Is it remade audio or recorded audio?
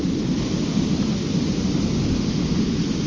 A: recorded